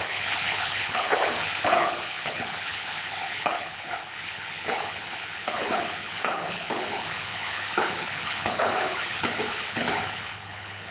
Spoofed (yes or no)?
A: yes